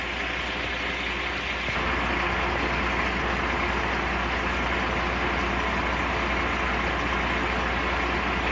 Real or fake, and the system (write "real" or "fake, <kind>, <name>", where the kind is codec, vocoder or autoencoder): real